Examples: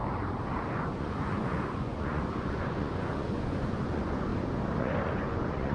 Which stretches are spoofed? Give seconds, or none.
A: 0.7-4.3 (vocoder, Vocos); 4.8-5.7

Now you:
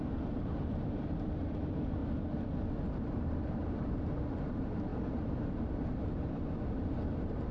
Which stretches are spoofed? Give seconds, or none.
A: 0.0-2.0 (vocoder, BigVGAN v2); 2.8-7.5

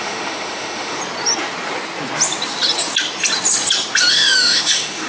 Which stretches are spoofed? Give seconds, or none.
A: 0.0-1.0 (autoencoder, DAC-VAE); 4.1-5.1

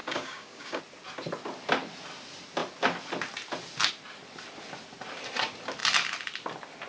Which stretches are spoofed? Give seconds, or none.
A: 0.0-0.8 (codec, DAC)

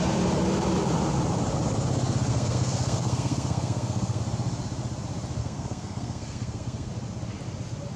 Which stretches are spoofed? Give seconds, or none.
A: 2.3-4.2 (codec, SNAC); 5.4-6.9

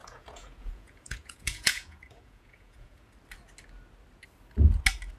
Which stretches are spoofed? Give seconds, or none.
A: 0.0-3.1 (vocoder, Vocos)

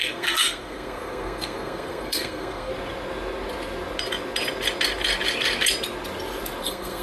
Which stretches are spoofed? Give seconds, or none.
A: 0.0-2.7 (codec, SNAC); 6.6-7.0